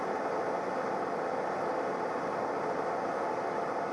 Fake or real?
real